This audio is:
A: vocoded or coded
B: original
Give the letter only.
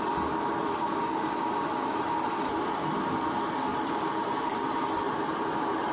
B